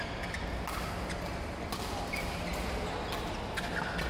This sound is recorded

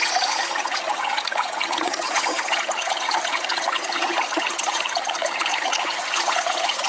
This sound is remade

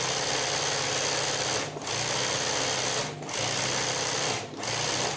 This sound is recorded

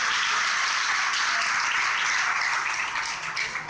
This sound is recorded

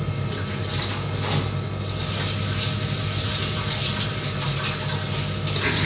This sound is recorded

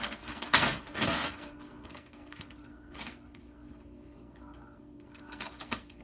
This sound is remade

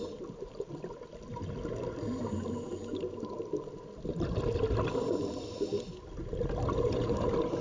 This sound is recorded